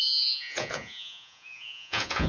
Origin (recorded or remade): remade